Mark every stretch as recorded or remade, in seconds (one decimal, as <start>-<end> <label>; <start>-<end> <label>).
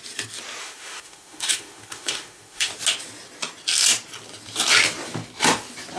0.0-0.6 recorded; 0.6-2.7 remade; 2.7-6.0 recorded